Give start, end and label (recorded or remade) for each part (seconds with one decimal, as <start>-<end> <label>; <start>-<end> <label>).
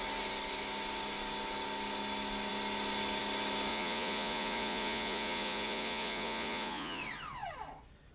0.0-3.7 recorded; 3.7-7.0 remade; 7.0-8.1 recorded